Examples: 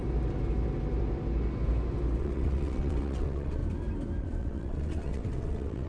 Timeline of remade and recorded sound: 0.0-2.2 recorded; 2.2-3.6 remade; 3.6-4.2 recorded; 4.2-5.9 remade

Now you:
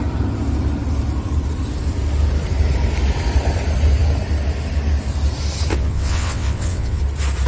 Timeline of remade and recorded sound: 0.0-5.7 recorded; 5.7-7.0 remade; 7.0-7.5 recorded